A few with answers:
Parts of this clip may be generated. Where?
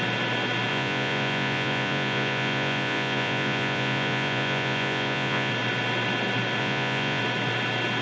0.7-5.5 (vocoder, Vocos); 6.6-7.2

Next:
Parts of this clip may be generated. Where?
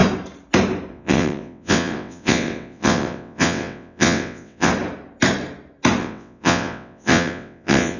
0.9-4.7 (vocoder, WaveNeXt); 6.0-8.0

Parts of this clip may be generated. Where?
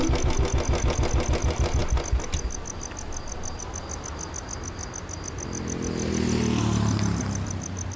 none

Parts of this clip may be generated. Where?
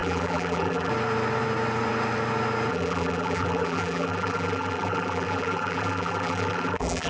0.0-0.9 (vocoder, BigVGAN v2); 2.7-7.1